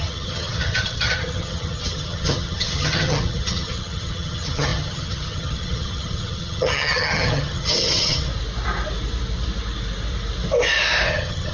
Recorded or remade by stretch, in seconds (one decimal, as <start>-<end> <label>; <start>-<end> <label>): 0.0-8.3 remade; 8.3-11.1 recorded; 11.1-11.5 remade